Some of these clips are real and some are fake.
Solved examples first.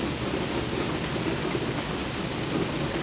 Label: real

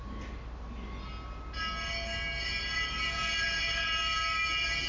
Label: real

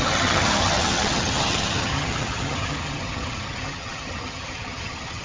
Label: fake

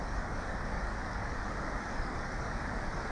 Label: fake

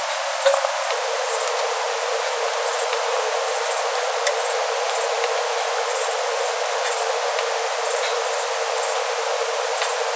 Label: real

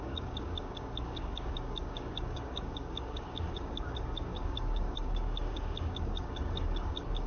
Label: fake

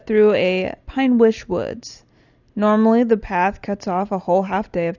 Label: real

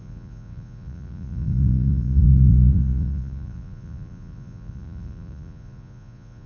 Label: fake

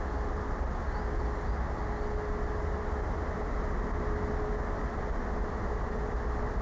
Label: real